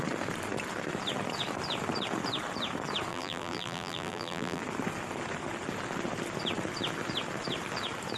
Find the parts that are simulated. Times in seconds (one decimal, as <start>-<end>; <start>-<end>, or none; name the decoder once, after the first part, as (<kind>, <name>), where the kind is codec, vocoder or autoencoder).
3.1-4.6 (vocoder, BigVGAN v2)